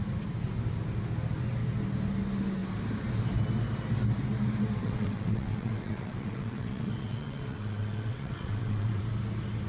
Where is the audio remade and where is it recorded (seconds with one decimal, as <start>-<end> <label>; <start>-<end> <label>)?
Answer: 0.0-4.8 recorded; 4.8-9.0 remade; 9.0-9.7 recorded